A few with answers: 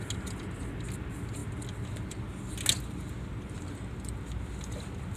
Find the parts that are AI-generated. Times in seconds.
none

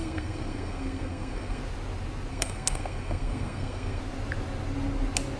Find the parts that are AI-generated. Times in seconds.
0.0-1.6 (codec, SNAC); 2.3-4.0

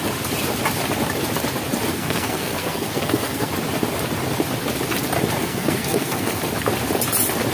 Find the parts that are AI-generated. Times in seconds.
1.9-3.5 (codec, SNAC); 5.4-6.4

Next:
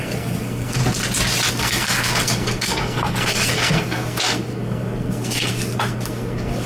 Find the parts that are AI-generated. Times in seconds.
0.0-0.8 (codec, SNAC); 1.5-6.7